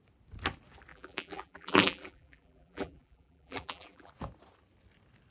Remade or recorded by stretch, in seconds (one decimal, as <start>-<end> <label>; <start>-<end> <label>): 0.0-0.9 recorded; 0.9-4.1 remade; 4.1-5.3 recorded